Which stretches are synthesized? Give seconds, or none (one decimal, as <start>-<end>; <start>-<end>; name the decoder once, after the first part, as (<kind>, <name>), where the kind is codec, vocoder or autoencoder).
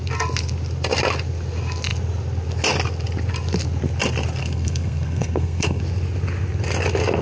4.4-5.8 (codec, SNAC)